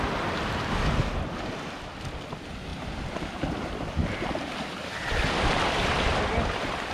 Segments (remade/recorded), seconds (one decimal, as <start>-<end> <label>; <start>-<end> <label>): 0.0-2.7 recorded; 2.7-6.9 remade